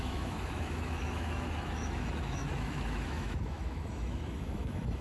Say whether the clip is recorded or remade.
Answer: remade